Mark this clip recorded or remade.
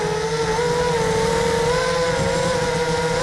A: recorded